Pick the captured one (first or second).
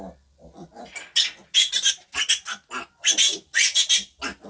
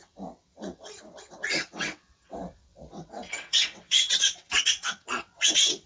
first